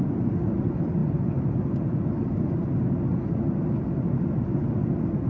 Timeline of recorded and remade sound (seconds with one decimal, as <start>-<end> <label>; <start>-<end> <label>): 0.0-5.3 recorded